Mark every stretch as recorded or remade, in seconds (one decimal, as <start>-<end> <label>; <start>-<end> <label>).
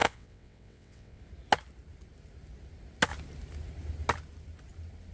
0.0-1.2 remade; 1.2-5.1 recorded